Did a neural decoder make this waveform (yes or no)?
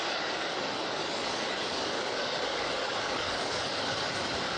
yes